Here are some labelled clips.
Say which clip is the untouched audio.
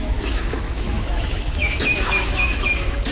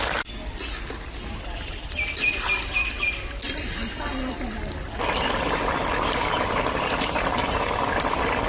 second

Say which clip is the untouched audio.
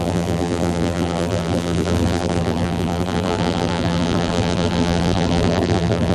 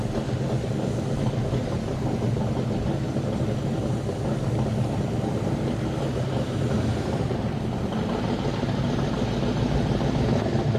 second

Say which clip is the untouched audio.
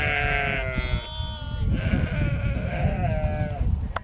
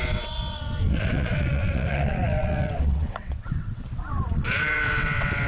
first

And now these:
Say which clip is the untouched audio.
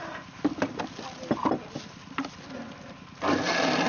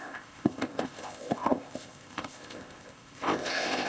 first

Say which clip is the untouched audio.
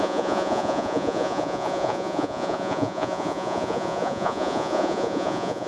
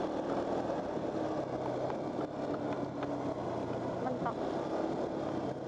second